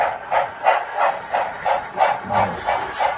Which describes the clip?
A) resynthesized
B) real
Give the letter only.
B